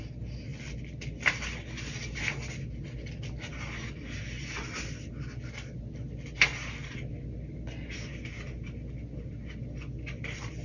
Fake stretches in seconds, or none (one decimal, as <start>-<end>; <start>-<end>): none